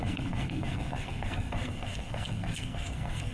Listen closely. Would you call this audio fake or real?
fake